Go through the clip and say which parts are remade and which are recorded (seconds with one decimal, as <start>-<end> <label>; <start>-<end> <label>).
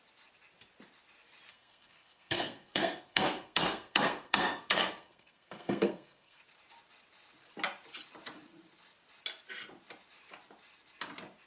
0.0-1.5 recorded; 1.5-6.4 remade; 6.4-11.5 recorded